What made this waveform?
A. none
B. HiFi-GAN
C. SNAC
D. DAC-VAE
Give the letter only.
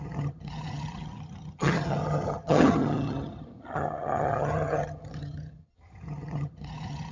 B